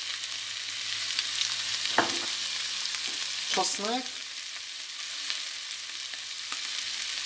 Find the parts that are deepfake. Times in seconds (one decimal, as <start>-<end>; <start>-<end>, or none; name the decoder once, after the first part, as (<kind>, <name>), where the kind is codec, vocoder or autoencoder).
none